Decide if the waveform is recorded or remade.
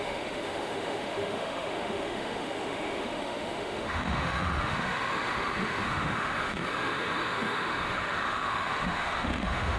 remade